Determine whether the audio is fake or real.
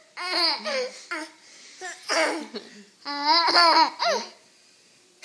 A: real